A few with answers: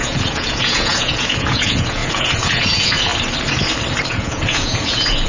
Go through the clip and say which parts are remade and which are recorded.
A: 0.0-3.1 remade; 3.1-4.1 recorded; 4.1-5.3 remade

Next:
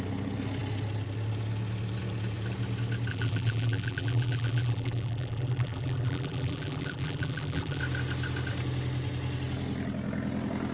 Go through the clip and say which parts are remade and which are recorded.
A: 0.0-3.1 recorded; 3.1-7.8 remade; 7.8-10.7 recorded

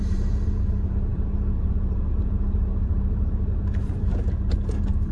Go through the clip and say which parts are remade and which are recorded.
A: 0.0-5.1 remade

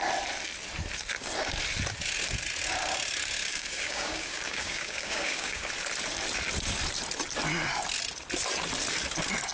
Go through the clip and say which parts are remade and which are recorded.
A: 0.0-3.5 recorded; 3.5-5.7 remade; 5.7-9.5 recorded